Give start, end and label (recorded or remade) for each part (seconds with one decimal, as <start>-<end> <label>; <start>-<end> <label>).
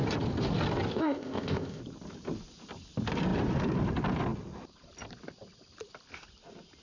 0.0-0.9 recorded; 0.9-1.8 remade; 1.8-6.8 recorded